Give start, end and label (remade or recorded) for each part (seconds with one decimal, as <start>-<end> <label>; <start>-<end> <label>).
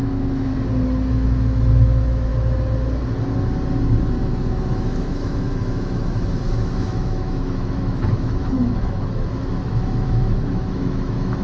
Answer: 0.0-0.5 remade; 0.5-1.1 recorded; 1.1-2.3 remade; 2.3-4.2 recorded; 4.2-11.4 remade